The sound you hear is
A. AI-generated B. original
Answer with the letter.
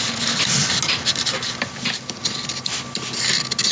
B